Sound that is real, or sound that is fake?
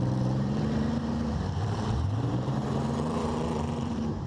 fake